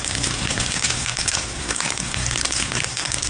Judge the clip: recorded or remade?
remade